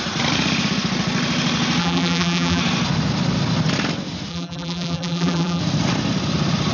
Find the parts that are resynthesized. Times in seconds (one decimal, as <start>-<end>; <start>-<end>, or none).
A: 1.8-2.6; 4.3-5.6